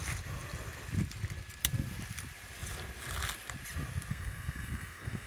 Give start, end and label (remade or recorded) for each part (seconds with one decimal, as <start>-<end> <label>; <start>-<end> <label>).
0.0-4.1 recorded; 4.1-5.3 remade